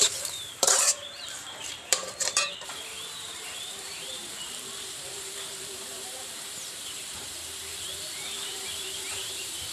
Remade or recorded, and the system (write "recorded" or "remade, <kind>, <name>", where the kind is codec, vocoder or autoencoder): remade, vocoder, BigVGAN v2